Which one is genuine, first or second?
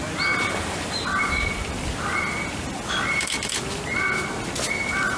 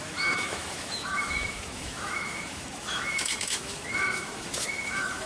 first